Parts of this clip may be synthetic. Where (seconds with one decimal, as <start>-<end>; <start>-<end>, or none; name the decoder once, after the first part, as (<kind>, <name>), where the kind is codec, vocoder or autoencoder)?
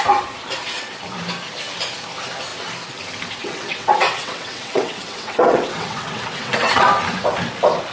3.4-6.9 (vocoder, WaveNeXt)